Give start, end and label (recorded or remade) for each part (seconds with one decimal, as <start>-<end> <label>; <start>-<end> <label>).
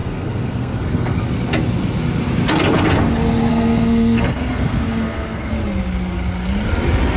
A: 0.0-1.2 remade; 1.2-3.5 recorded; 3.5-5.5 remade; 5.5-7.2 recorded